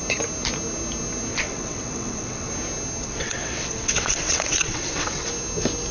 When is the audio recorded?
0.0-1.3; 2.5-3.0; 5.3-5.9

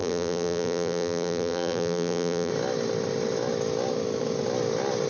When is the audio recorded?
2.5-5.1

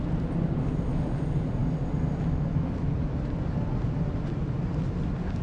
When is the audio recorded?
0.0-5.4

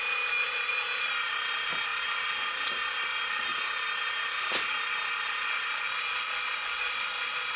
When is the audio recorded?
0.0-6.1

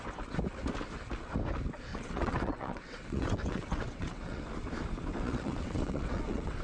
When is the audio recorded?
0.0-1.9; 4.5-5.1

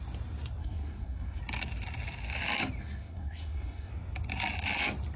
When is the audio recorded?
0.0-0.6; 1.4-2.8; 3.9-5.2

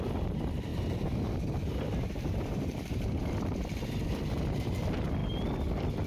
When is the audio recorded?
0.0-0.7; 3.3-6.1

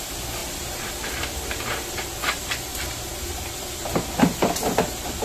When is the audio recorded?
0.0-0.4; 1.9-2.7; 3.5-5.2